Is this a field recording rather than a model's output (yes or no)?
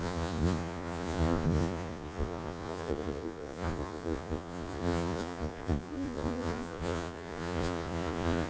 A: no